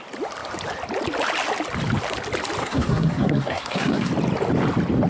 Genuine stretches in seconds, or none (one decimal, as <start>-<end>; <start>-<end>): 0.0-2.6; 4.1-5.1